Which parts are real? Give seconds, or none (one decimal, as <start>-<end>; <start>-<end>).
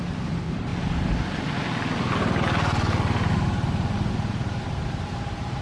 0.7-4.1